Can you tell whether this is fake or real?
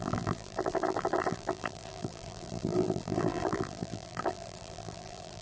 fake